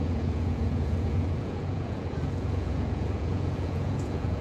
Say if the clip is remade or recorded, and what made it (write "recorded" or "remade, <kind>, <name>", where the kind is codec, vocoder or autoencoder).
remade, vocoder, Vocos